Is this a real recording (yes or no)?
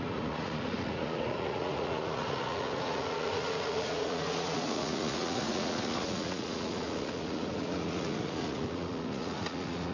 no